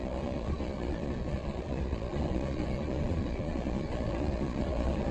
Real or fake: fake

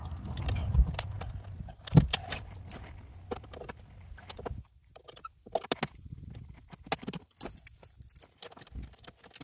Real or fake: real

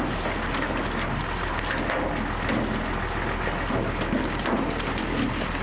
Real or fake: real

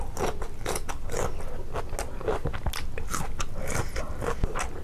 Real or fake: real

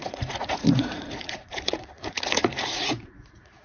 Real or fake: fake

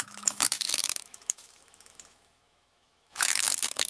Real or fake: fake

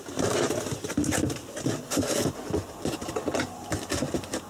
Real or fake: real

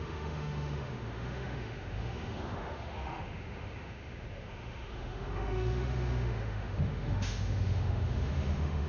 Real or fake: fake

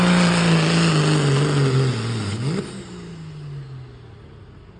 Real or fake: real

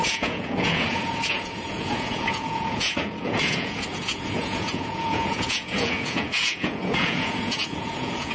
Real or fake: fake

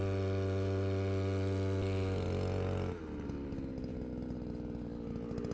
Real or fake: real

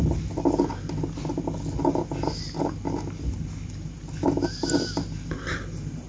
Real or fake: real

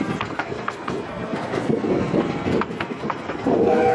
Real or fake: fake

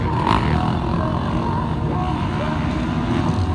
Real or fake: real